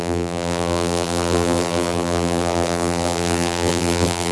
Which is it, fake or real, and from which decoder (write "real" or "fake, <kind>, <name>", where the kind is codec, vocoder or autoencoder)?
fake, vocoder, BigVGAN v2